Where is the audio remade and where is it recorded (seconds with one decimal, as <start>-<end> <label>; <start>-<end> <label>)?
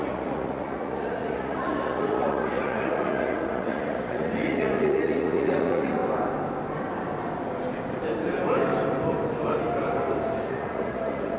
0.0-6.0 remade; 6.0-10.5 recorded; 10.5-11.4 remade